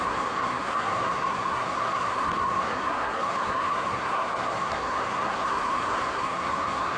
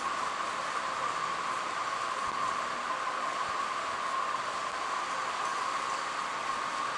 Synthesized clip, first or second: first